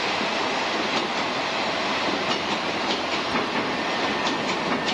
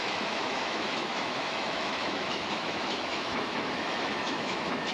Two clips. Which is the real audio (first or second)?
first